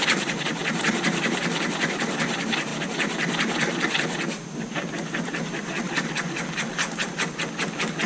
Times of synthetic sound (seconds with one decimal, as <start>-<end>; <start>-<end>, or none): none